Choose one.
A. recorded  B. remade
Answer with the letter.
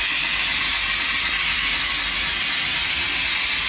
A